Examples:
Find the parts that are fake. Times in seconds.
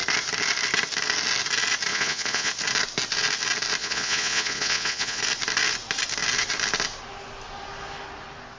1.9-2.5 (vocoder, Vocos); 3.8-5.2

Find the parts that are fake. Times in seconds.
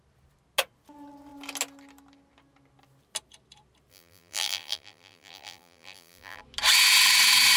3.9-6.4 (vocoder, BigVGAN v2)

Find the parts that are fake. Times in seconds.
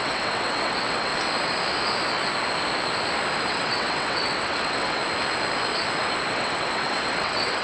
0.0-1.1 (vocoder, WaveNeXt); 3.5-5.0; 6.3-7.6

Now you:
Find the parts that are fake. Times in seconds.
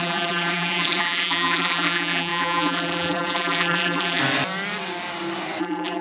0.0-4.2 (vocoder, BigVGAN v2); 5.6-6.0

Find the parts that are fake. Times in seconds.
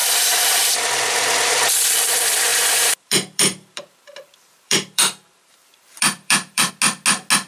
0.0-0.9 (vocoder, BigVGAN v2); 2.5-6.7